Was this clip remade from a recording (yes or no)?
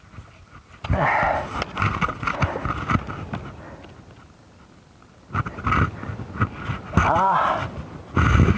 no